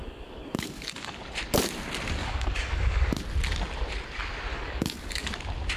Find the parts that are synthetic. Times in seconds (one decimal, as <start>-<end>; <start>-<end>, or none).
0.0-1.2; 2.2-3.2; 4.5-5.3

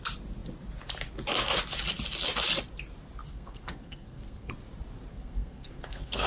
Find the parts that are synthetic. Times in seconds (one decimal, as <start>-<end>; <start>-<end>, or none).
3.3-4.5; 5.1-6.3

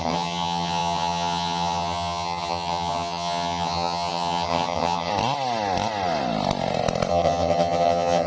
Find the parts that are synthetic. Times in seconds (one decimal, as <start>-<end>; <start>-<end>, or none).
0.0-5.1; 7.1-8.3

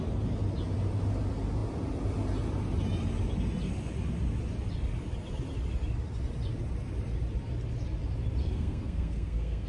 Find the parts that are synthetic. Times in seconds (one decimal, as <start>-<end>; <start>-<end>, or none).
8.4-9.7

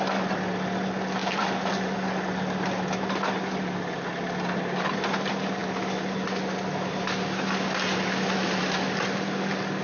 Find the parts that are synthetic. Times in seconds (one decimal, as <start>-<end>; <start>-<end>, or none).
none

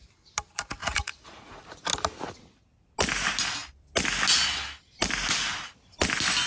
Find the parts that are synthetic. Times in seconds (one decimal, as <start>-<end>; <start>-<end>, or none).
0.8-1.6

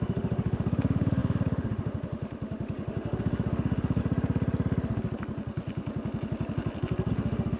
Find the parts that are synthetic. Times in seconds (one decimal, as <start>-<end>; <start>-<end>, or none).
0.0-4.0; 7.1-7.6

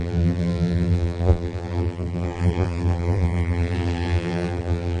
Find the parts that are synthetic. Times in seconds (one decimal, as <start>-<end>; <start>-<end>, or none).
0.0-5.0